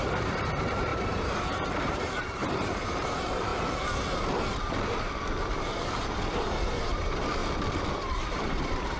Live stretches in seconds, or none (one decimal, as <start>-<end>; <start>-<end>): 3.5-5.6; 6.0-6.7; 7.4-8.1